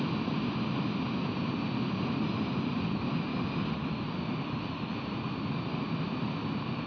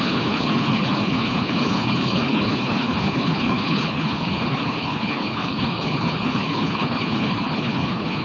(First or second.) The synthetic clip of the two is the second